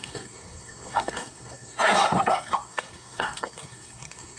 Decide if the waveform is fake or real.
fake